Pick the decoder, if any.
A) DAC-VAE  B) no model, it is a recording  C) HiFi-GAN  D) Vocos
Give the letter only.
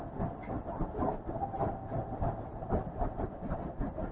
B